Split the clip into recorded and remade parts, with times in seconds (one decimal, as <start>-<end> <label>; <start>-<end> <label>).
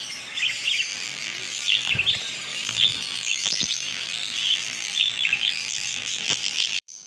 0.0-0.9 recorded; 0.9-1.9 remade; 1.9-2.5 recorded; 2.5-7.1 remade